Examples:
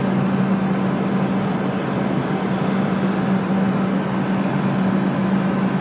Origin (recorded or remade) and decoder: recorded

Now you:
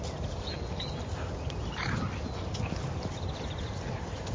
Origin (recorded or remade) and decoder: recorded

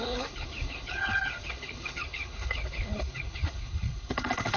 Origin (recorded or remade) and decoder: remade, codec, HILCodec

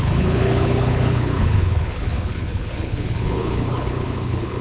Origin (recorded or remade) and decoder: remade, codec, HILCodec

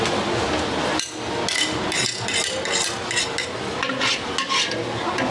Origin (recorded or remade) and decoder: recorded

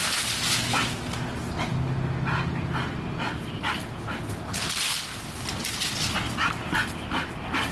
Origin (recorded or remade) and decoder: recorded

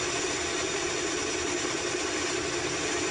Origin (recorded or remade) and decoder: recorded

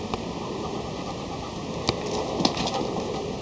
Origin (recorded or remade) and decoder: recorded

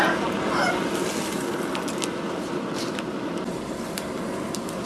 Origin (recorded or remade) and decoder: recorded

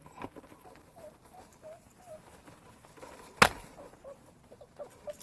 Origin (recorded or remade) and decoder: recorded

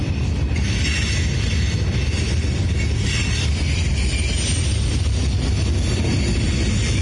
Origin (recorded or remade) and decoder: recorded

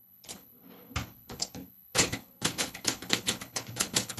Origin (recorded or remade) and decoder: remade, codec, HILCodec